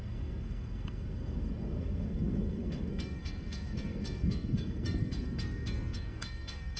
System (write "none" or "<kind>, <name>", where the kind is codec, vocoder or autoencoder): codec, SNAC